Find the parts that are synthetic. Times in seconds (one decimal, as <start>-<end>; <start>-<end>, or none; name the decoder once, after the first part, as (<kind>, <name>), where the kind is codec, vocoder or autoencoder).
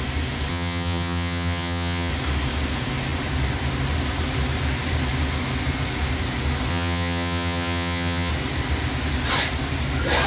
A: 0.5-2.1 (vocoder, HiFi-GAN); 6.7-8.3